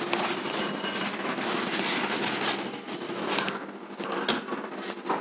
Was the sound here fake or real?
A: real